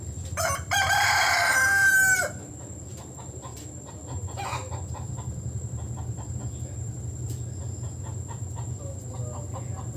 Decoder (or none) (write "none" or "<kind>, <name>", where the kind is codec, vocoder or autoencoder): vocoder, BigVGAN v2